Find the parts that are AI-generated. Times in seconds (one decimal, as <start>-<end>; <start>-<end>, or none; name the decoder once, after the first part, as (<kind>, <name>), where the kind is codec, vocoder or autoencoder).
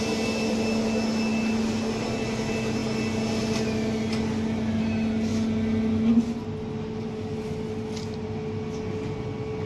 none